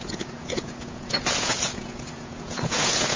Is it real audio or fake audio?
fake